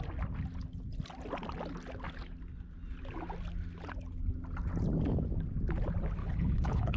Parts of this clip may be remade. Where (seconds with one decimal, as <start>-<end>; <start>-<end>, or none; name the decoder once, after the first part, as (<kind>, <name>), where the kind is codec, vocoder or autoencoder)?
6.2-7.0 (codec, HILCodec)